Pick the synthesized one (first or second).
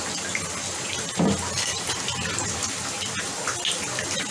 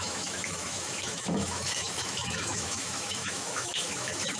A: second